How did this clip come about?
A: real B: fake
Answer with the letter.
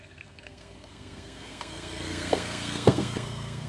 B